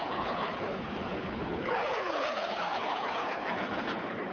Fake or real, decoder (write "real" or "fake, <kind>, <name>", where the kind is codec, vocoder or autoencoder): fake, codec, HILCodec